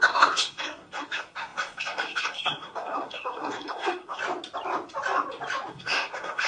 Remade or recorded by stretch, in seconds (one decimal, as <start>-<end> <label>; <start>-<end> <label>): 0.0-4.2 remade; 4.2-5.7 recorded; 5.7-6.5 remade